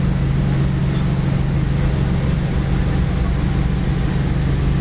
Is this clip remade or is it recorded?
recorded